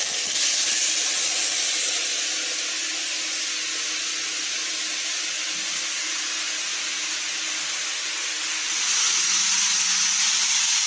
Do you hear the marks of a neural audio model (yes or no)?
no